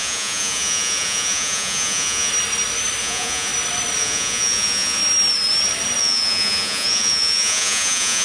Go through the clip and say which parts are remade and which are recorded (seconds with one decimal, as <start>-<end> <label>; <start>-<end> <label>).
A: 0.0-2.3 remade; 2.3-3.0 recorded; 3.0-3.5 remade; 3.5-4.0 recorded; 4.0-5.0 remade; 5.0-6.0 recorded; 6.0-8.2 remade